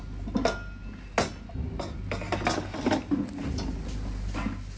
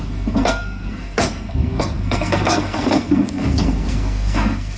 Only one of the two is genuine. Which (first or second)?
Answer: first